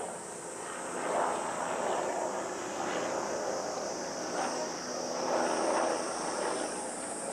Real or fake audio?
real